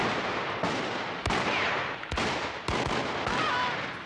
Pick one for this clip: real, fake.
real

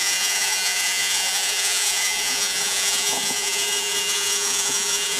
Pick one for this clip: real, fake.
fake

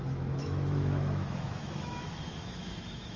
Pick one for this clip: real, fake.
fake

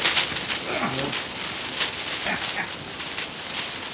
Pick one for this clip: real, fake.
real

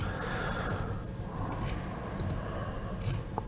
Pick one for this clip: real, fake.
real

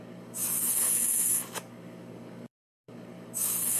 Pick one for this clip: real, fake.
fake